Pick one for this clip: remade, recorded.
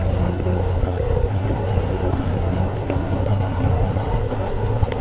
remade